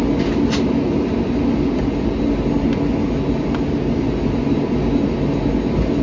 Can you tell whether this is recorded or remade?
recorded